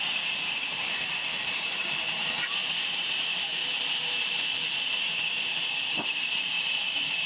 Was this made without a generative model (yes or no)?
no